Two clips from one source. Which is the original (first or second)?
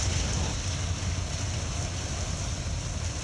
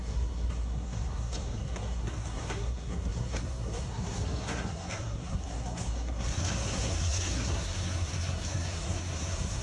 first